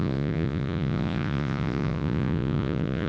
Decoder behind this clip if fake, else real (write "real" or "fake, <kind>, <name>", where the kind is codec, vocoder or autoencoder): fake, vocoder, Vocos